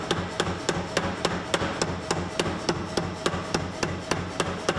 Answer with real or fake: real